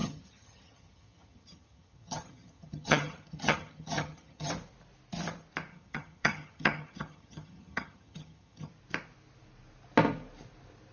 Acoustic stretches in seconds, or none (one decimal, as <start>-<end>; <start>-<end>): 4.5-5.7; 8.7-10.9